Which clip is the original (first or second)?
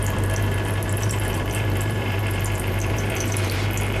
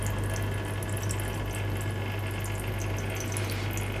second